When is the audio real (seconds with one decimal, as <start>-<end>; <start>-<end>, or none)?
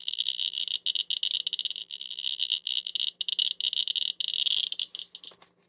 0.6-1.8; 2.9-5.7